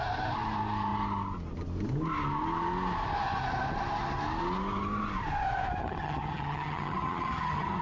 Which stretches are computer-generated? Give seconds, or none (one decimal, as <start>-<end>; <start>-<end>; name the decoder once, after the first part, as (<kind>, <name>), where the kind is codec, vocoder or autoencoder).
5.8-7.8 (vocoder, HiFi-GAN)